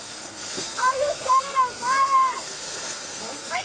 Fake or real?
fake